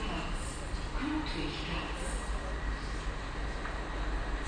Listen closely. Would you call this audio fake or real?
real